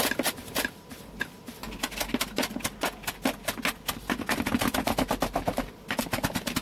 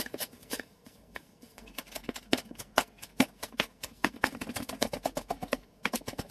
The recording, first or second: first